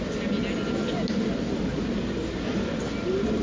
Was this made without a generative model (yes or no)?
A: yes